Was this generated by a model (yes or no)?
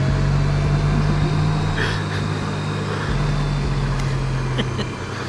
no